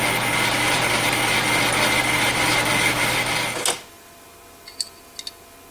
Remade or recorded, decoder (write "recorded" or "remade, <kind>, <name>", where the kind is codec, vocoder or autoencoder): recorded